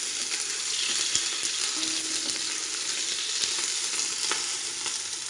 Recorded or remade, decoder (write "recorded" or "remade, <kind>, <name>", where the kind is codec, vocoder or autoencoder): recorded